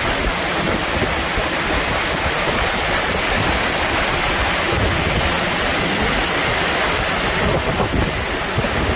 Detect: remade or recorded recorded